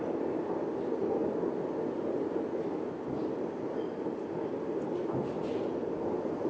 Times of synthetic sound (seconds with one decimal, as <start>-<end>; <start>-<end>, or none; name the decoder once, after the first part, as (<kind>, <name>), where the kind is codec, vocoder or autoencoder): none